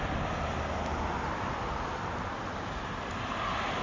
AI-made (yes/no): no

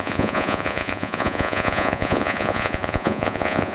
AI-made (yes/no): yes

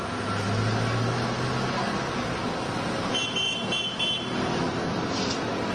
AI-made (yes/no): no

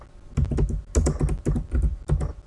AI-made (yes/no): no